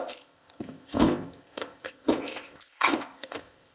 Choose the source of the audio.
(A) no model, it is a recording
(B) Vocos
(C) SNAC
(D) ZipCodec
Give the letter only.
D